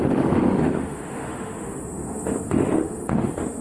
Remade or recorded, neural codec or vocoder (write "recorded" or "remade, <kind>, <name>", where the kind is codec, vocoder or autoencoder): remade, autoencoder, DAC-VAE